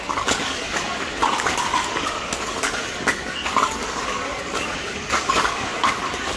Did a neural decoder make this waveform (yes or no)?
yes